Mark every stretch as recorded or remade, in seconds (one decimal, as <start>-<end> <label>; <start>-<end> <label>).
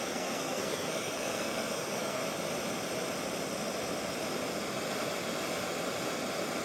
0.0-2.2 remade; 2.2-6.6 recorded